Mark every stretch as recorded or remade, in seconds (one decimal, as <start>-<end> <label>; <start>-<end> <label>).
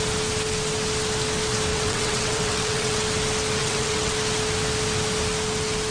0.0-1.7 recorded; 1.7-3.0 remade; 3.0-3.6 recorded; 3.6-4.1 remade; 4.1-5.9 recorded